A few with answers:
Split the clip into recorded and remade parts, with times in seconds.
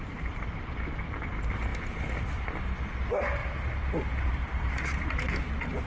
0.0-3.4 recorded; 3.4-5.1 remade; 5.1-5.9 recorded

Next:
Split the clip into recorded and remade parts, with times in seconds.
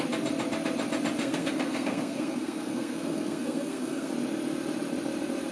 0.0-1.2 recorded; 1.2-4.1 remade; 4.1-5.5 recorded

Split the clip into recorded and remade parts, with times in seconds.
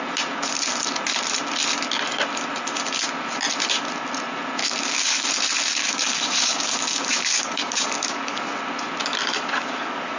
0.0-4.6 recorded; 4.6-5.3 remade; 5.3-5.8 recorded; 5.8-8.5 remade; 8.5-9.2 recorded; 9.2-10.2 remade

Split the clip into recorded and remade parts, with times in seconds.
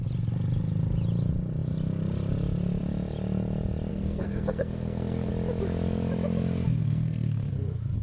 0.0-3.9 recorded; 3.9-5.3 remade; 5.3-6.8 recorded; 6.8-7.5 remade; 7.5-8.0 recorded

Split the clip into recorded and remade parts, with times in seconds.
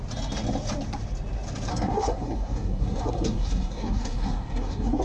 0.0-1.7 recorded; 1.7-5.0 remade